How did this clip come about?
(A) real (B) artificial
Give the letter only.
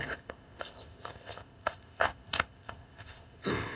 B